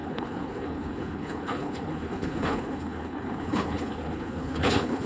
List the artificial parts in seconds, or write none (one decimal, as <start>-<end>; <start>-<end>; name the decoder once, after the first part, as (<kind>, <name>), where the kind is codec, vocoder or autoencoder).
0.0-5.1 (codec, HILCodec)